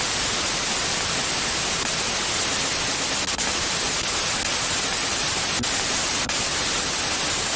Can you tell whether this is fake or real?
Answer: real